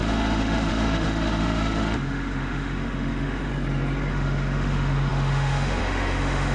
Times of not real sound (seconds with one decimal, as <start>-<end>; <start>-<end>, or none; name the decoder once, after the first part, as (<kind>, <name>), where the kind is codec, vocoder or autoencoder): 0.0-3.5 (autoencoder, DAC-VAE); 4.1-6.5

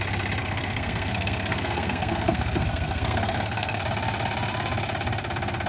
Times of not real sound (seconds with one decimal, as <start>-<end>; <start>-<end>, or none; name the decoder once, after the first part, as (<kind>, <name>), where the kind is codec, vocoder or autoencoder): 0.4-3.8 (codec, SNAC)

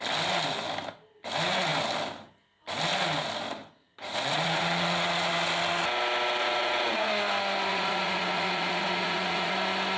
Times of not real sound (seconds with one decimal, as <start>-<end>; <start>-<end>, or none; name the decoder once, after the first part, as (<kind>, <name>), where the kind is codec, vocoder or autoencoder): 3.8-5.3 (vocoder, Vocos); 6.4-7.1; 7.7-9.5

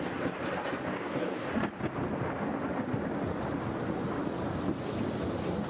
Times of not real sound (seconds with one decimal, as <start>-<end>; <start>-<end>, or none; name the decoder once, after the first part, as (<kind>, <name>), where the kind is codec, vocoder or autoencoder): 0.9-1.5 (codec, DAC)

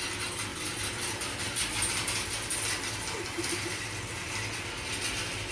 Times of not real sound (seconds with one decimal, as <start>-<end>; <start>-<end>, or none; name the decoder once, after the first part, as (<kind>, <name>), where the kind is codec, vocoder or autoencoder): none